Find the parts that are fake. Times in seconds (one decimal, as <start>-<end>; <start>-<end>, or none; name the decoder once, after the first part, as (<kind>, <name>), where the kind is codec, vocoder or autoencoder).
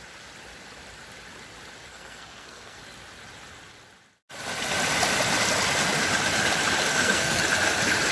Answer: 1.9-2.8 (codec, SNAC); 6.9-7.4